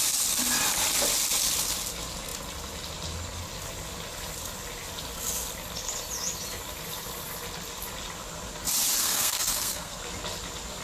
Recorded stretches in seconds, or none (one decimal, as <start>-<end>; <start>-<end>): 0.0-9.0; 10.0-10.8

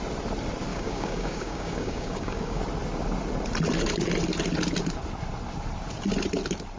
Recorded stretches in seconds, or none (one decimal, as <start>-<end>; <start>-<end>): 0.0-0.7; 2.6-6.8

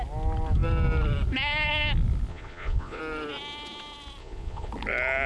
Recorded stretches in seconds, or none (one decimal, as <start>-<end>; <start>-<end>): 0.0-2.3; 3.0-4.2; 4.7-5.3

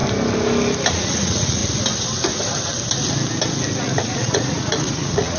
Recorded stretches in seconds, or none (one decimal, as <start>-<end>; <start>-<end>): 0.0-0.9; 1.6-3.8